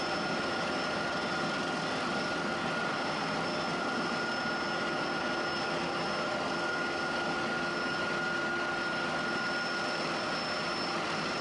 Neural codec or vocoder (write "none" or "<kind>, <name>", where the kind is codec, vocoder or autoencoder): none